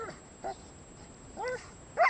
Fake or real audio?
real